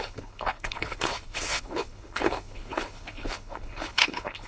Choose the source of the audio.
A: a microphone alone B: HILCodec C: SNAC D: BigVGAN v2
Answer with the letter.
B